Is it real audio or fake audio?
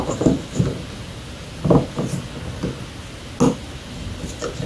real